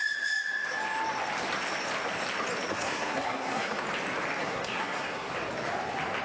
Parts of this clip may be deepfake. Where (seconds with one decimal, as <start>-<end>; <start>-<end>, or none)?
2.7-3.8; 4.4-5.3